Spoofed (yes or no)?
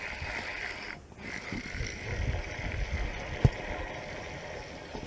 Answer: no